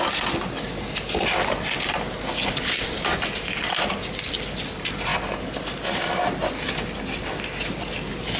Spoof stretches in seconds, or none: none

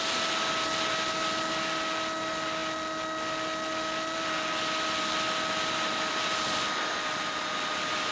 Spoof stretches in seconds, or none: none